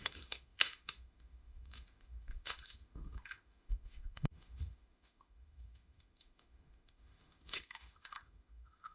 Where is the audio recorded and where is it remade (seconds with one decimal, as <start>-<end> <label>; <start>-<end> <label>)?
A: 0.0-8.9 remade